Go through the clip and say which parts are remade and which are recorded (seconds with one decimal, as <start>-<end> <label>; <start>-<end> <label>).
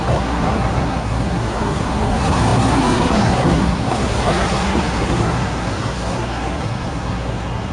0.0-7.7 remade